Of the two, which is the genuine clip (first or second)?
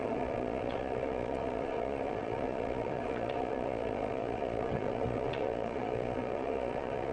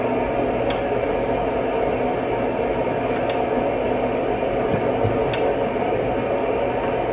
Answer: second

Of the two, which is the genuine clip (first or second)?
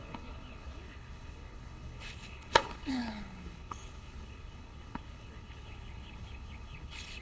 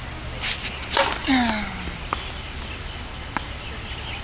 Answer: second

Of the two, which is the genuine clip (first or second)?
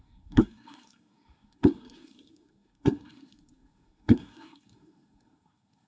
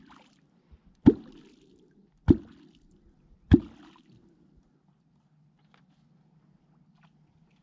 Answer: second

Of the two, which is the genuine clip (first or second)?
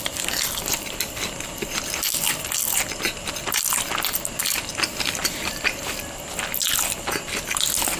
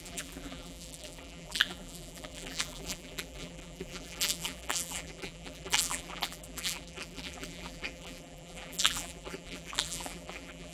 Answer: first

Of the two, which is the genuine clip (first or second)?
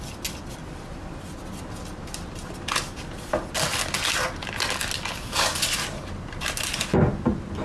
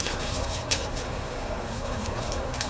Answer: first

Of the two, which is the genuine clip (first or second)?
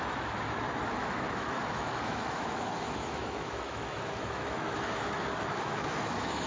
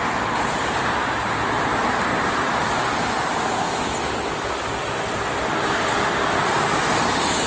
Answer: second